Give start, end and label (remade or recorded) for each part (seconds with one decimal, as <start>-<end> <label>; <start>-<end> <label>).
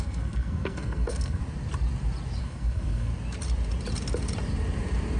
0.0-1.4 remade; 1.4-2.4 recorded; 2.4-3.1 remade; 3.1-5.2 recorded